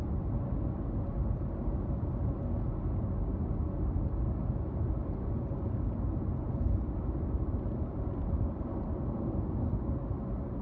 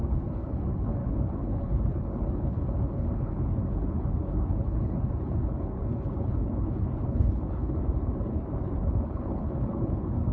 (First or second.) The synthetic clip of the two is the second